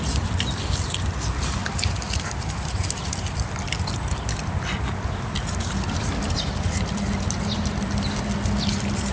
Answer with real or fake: real